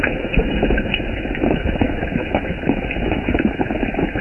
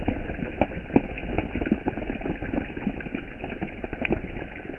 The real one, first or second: second